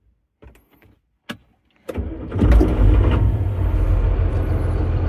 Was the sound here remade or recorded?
recorded